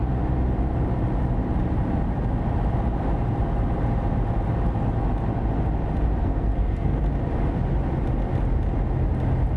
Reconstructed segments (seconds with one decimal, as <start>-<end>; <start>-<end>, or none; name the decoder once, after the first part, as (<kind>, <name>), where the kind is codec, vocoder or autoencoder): 6.2-7.0 (codec, SNAC)